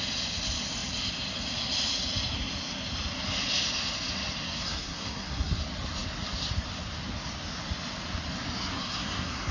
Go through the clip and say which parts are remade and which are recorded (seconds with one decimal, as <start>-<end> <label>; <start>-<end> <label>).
0.0-4.4 recorded; 4.4-5.6 remade; 5.6-8.7 recorded; 8.7-9.5 remade